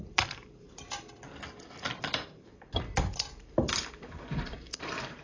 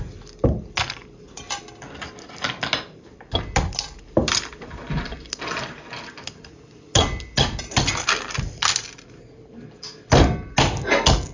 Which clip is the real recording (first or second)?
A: second